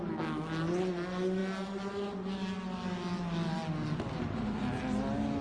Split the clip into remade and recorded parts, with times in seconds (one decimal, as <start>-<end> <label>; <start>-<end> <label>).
0.0-5.4 recorded